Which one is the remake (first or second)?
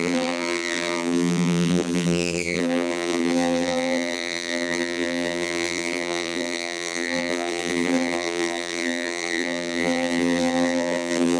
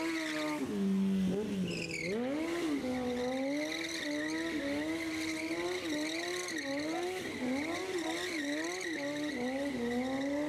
first